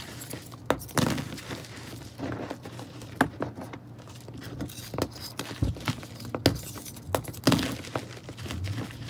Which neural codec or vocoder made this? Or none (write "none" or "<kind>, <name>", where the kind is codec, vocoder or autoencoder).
none